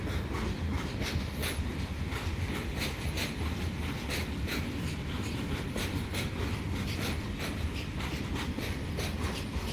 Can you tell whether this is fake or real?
real